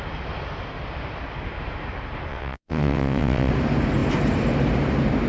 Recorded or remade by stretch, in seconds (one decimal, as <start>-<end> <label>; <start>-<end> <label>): 0.0-2.3 recorded; 2.3-3.5 remade; 3.5-5.3 recorded